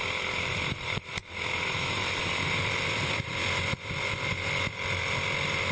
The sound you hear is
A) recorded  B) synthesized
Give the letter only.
A